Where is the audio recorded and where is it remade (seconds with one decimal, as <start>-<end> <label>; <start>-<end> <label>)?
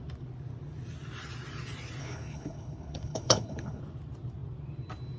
0.0-2.0 recorded; 2.0-3.8 remade; 3.8-5.2 recorded